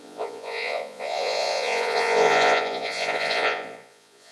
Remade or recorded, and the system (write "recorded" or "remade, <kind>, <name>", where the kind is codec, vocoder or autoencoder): remade, vocoder, Vocos